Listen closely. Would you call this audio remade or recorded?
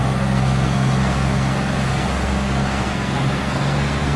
remade